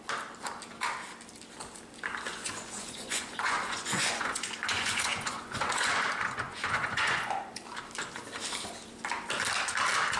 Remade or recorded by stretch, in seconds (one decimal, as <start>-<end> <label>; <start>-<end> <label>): 0.0-2.3 recorded; 2.3-7.5 remade; 7.5-10.2 recorded